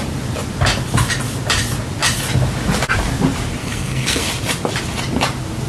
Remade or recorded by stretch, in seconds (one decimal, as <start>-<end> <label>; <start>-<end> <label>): 0.0-3.6 recorded; 3.6-4.3 remade; 4.3-5.7 recorded